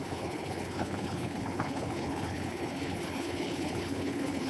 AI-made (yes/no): yes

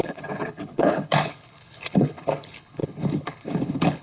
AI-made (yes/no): yes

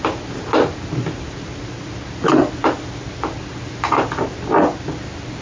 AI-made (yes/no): no